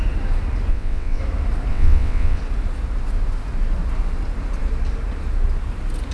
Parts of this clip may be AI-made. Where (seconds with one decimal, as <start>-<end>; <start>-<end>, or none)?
0.7-1.2; 1.7-2.4